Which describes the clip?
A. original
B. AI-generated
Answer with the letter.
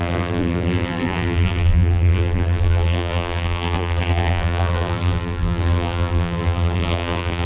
B